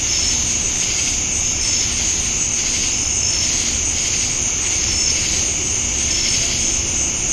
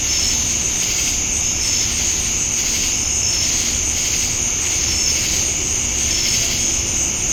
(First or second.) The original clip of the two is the second